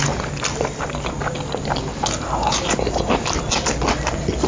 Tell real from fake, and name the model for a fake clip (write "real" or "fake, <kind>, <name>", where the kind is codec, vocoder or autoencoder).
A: real